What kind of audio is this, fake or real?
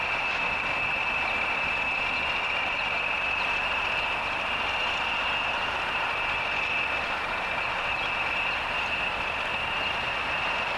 real